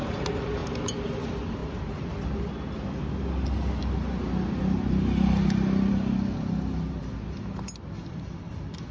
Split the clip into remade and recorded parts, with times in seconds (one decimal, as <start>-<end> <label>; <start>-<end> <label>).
0.0-8.9 recorded